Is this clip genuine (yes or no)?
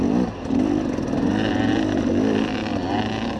yes